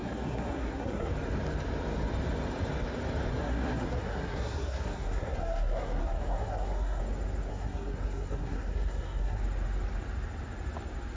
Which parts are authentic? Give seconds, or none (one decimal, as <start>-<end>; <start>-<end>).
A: 1.1-3.3; 7.0-7.5; 9.4-11.2